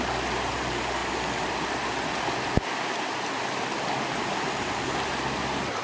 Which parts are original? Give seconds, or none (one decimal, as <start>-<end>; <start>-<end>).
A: 0.0-5.8